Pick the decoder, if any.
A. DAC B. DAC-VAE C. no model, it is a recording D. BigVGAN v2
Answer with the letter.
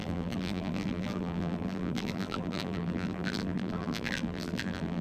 D